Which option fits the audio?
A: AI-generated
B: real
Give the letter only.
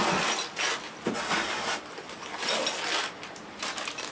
B